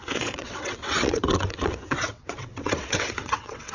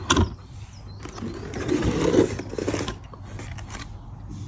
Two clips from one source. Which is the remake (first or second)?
first